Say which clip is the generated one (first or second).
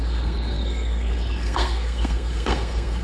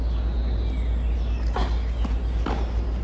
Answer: first